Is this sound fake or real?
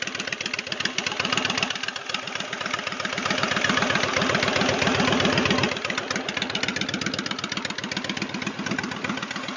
real